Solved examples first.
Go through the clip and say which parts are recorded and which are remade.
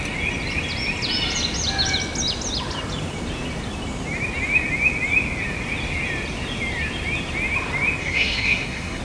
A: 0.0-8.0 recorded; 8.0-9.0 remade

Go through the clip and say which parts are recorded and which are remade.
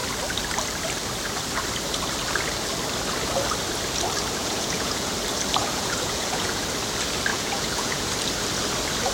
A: 0.0-4.4 recorded; 4.4-5.1 remade; 5.1-5.6 recorded; 5.6-6.6 remade; 6.6-7.3 recorded; 7.3-8.1 remade; 8.1-9.1 recorded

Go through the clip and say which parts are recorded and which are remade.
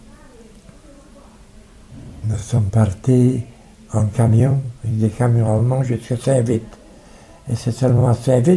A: 0.0-8.6 remade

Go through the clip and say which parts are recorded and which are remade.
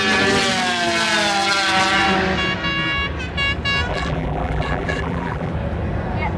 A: 0.0-3.9 recorded; 3.9-5.5 remade; 5.5-6.4 recorded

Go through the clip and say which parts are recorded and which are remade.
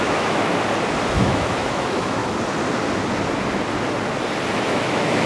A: 0.0-0.5 remade; 0.5-1.2 recorded; 1.2-2.2 remade; 2.2-4.5 recorded; 4.5-5.3 remade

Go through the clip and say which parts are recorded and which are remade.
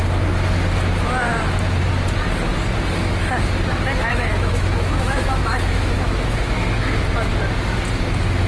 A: 0.0-4.1 recorded; 4.1-7.0 remade; 7.0-8.5 recorded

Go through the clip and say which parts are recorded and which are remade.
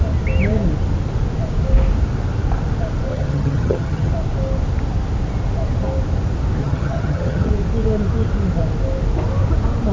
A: 0.0-3.1 recorded; 3.1-4.1 remade; 4.1-6.6 recorded; 6.6-7.5 remade; 7.5-9.9 recorded